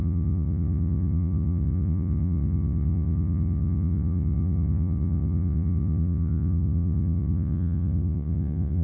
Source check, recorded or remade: remade